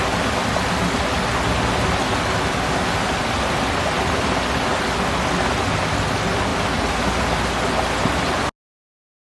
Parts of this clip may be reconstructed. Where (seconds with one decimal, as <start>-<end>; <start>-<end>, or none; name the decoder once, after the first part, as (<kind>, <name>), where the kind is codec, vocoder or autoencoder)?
none